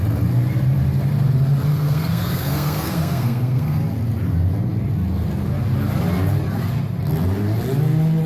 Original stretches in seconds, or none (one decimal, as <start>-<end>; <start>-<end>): 0.0-1.7; 3.8-8.3